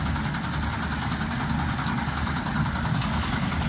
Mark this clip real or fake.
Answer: real